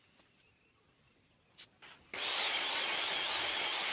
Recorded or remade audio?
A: remade